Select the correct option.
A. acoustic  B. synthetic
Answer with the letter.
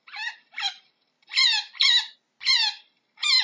A